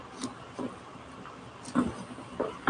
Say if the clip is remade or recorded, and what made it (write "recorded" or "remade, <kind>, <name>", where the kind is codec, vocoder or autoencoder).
recorded